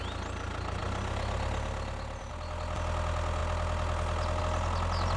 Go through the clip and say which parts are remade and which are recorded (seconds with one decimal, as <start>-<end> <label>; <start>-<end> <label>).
0.0-5.2 recorded